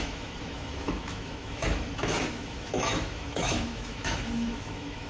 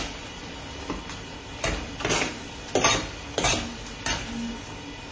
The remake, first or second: first